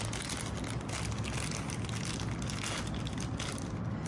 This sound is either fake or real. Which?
real